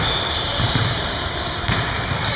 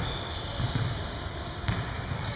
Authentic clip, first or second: second